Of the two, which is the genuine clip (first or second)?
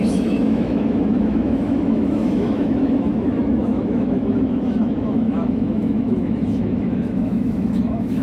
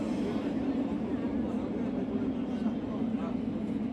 second